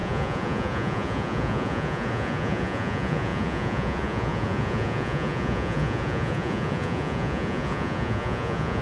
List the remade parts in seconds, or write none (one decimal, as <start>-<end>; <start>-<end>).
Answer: 0.0-8.8